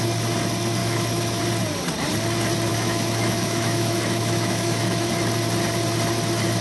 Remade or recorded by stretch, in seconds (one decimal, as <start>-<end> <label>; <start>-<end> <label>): 0.0-0.8 recorded; 0.8-1.4 remade; 1.4-2.7 recorded; 2.7-5.1 remade; 5.1-6.6 recorded